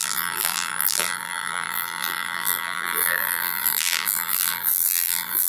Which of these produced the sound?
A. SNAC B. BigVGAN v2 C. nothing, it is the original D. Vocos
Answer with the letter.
B